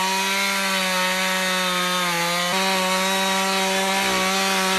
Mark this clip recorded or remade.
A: recorded